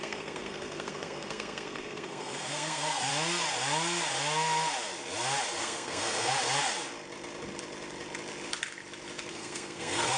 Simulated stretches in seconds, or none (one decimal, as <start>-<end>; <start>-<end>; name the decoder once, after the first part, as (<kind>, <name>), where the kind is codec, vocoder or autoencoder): 0.0-3.1 (codec, SNAC); 5.6-6.3; 9.3-10.2